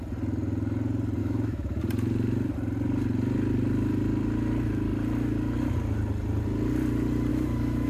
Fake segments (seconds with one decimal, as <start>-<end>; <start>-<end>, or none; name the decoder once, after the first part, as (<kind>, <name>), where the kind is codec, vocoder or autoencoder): 1.2-1.8 (autoencoder, DAC-VAE); 7.3-7.9